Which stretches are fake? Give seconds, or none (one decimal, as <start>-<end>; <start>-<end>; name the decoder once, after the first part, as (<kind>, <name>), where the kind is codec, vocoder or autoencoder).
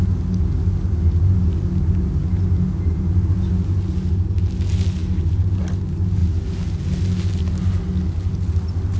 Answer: none